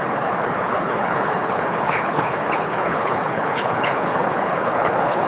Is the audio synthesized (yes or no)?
yes